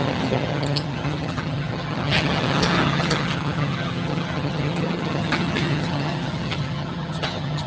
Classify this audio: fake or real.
fake